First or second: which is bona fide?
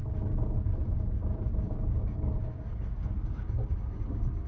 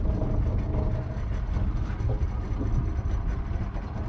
second